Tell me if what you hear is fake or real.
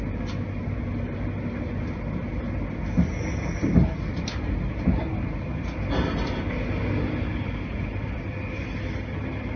real